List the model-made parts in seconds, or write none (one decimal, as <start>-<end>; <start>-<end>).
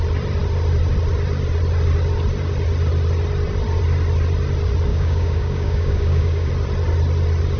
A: 4.9-6.5